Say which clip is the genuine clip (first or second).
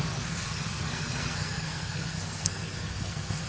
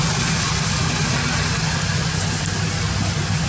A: second